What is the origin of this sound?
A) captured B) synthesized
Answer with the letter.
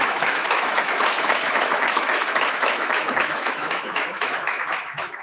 B